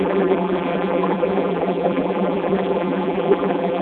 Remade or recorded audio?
remade